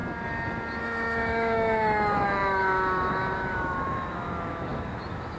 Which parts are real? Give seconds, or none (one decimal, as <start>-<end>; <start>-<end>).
0.0-0.8